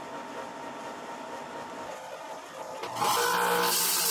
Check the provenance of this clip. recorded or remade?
recorded